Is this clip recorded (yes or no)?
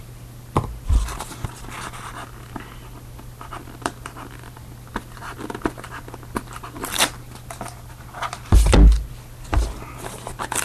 yes